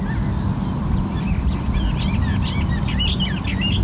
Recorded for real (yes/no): yes